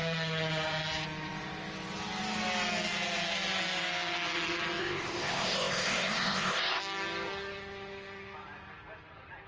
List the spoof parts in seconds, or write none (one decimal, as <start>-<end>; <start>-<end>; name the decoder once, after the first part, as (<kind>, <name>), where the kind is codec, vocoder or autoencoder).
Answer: 4.8-6.8 (codec, ZipCodec)